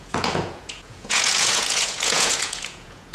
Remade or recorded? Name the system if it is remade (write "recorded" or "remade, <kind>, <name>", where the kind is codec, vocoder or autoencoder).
remade, vocoder, Vocos